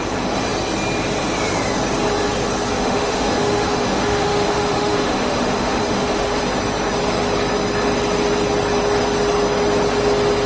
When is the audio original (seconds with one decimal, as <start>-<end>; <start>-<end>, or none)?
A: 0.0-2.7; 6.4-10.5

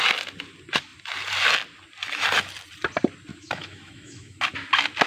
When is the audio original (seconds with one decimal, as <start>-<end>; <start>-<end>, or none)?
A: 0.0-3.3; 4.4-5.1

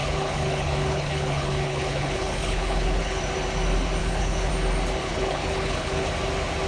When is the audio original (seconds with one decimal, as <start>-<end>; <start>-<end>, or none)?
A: 3.2-4.0; 4.5-5.0; 6.1-6.7